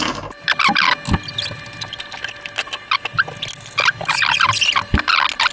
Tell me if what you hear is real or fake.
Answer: real